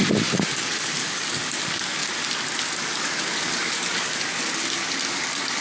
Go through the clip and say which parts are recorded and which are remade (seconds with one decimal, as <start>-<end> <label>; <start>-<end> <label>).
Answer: 0.0-0.6 recorded; 0.6-2.0 remade; 2.0-2.8 recorded; 2.8-5.6 remade